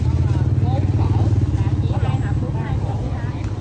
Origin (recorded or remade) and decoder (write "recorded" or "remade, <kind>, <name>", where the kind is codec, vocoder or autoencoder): recorded